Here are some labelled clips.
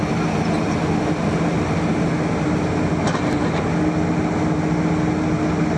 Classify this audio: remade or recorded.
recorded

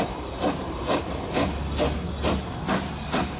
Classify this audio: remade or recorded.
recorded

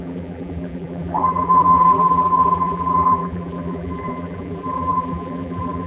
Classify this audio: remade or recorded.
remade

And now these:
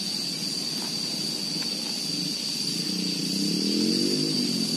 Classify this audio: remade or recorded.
recorded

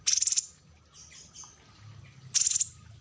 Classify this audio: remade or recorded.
recorded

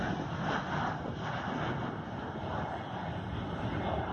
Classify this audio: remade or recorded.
recorded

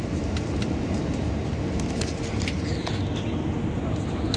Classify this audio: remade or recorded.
recorded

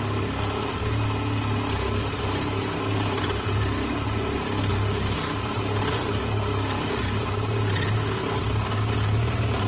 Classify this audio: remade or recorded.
recorded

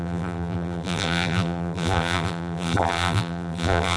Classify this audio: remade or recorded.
remade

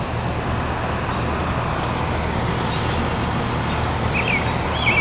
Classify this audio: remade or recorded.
recorded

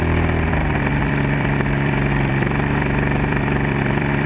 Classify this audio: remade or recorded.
remade